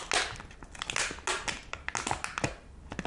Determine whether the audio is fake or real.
real